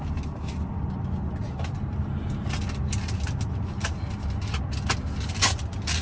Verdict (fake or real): real